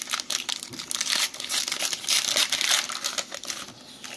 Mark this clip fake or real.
real